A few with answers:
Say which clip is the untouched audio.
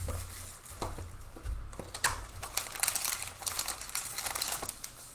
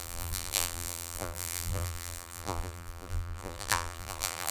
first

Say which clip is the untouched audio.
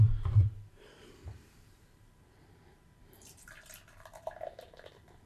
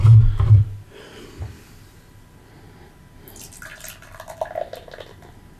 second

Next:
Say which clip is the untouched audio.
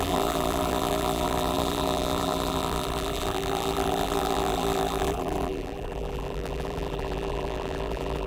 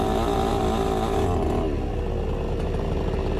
second